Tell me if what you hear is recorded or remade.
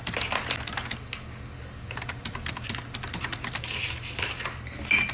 recorded